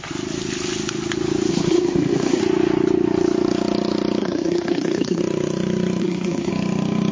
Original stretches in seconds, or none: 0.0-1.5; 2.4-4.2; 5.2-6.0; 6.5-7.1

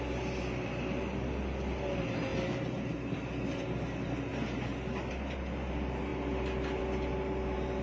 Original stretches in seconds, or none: 0.0-7.8

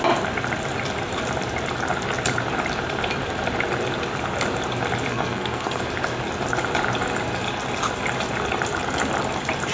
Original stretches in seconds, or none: 0.0-5.1; 5.8-9.7

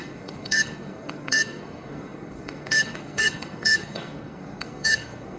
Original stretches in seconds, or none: none

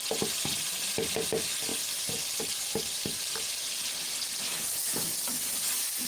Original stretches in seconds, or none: 0.0-6.1

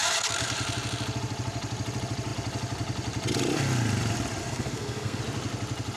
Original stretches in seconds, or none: 0.0-4.4; 5.2-6.0

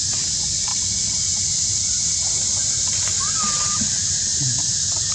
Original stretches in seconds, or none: 0.0-5.1

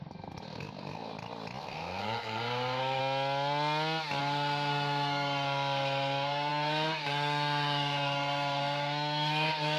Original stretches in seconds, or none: 1.1-1.6; 3.0-4.2